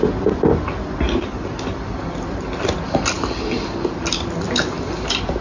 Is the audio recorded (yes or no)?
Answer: yes